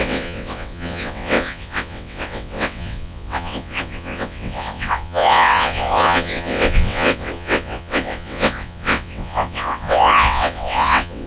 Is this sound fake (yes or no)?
yes